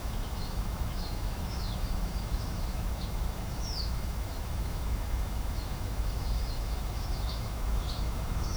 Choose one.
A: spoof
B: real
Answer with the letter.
A